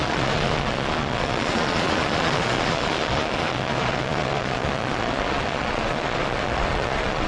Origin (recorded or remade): remade